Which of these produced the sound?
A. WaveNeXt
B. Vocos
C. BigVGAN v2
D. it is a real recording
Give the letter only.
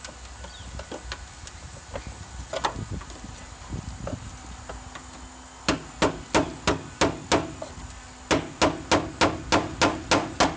D